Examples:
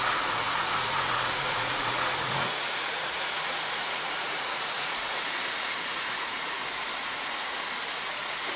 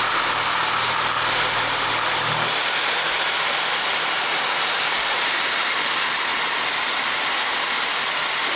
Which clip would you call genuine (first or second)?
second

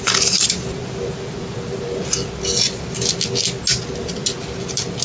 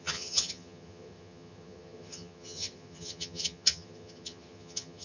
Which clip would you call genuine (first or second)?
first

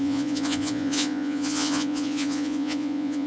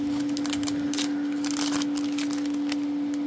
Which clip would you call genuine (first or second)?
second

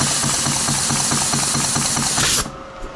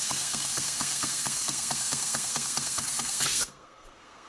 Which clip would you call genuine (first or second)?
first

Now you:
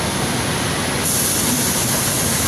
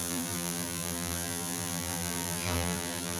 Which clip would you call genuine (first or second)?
first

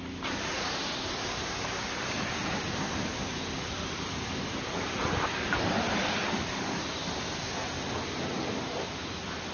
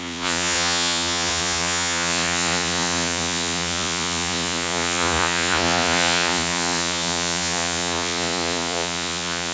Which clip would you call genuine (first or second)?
first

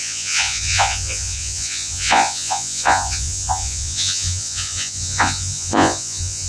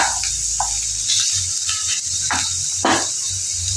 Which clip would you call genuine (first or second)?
second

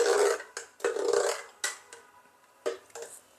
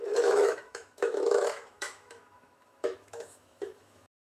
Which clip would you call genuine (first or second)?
first